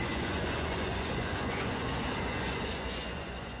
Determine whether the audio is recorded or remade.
remade